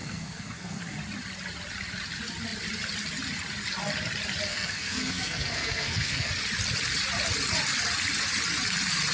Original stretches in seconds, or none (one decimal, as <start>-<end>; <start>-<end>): 0.8-4.5; 6.3-9.1